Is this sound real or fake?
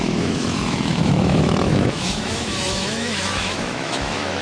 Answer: fake